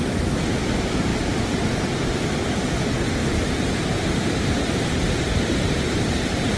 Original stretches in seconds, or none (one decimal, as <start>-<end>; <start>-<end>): 0.0-1.1; 2.3-3.2; 5.9-6.6